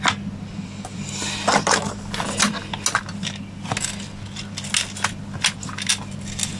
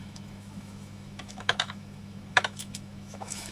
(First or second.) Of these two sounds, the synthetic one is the second